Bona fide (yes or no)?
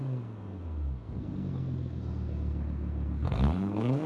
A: no